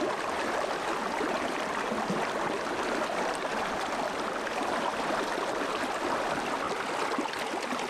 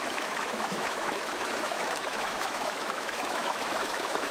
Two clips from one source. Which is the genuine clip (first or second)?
first